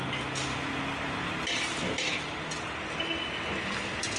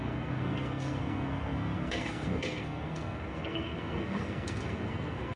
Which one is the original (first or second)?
first